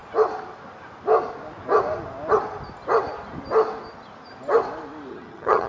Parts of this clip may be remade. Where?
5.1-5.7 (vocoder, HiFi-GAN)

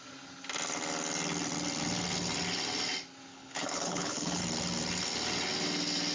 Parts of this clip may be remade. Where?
3.3-4.4 (codec, HILCodec)

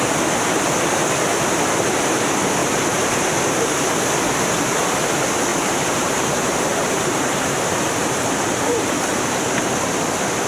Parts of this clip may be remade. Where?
2.6-3.9 (vocoder, BigVGAN v2); 5.5-9.8